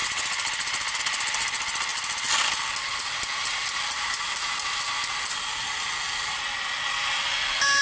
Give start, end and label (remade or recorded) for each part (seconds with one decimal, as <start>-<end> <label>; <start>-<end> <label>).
0.0-7.8 recorded